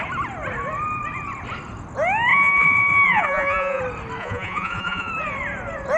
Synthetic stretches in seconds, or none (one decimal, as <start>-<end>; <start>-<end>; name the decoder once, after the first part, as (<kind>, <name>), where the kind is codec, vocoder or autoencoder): 2.3-3.8 (vocoder, Vocos); 4.2-5.1